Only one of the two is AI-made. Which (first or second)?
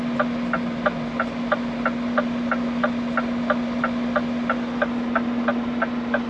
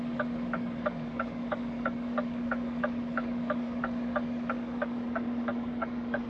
second